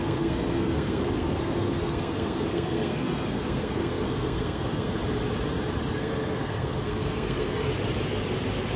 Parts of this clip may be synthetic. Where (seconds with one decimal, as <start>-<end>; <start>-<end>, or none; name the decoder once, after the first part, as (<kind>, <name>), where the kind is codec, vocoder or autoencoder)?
0.0-5.0 (codec, SNAC); 5.9-7.7